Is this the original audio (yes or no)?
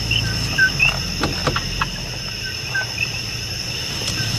yes